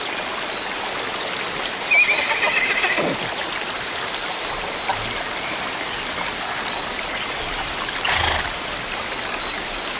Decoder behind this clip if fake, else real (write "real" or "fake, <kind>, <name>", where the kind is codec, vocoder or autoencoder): real